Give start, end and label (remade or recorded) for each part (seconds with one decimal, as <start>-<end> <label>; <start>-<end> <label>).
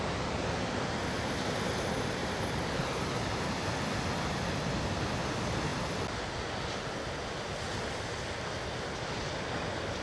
0.0-2.2 recorded; 2.2-3.6 remade; 3.6-10.0 recorded